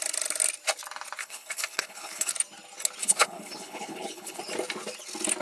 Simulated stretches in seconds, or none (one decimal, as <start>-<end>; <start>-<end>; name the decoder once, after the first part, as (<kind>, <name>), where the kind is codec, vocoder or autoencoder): 1.2-2.3 (codec, HILCodec); 3.0-4.4